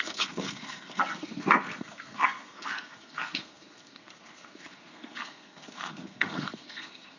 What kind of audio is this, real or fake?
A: fake